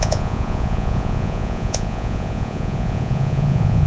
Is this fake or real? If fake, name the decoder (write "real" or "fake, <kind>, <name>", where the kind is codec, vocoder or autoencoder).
fake, vocoder, Vocos